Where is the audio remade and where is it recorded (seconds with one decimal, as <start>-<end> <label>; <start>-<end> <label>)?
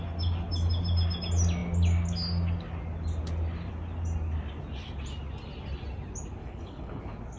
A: 0.0-6.4 recorded; 6.4-7.0 remade; 7.0-7.4 recorded